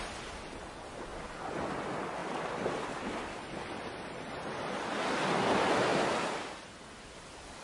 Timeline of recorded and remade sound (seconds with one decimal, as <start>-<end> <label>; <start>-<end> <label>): 0.0-7.6 recorded